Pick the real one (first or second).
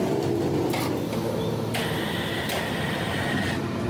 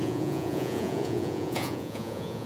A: first